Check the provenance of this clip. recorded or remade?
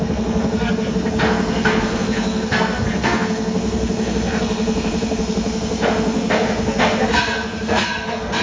remade